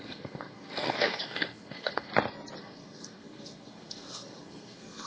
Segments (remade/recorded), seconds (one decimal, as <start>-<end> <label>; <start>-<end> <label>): 0.0-2.1 remade; 2.1-2.6 recorded; 2.6-5.1 remade